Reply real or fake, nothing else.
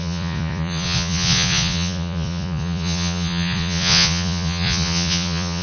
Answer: fake